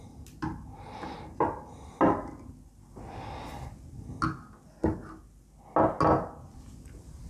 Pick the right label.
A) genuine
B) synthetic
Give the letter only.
A